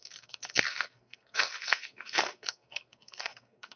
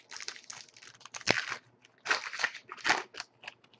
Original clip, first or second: second